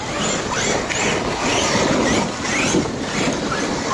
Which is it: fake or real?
real